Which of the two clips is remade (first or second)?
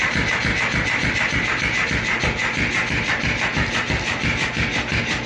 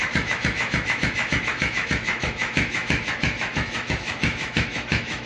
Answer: second